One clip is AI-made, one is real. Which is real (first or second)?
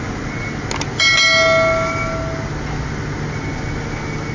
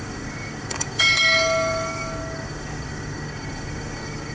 first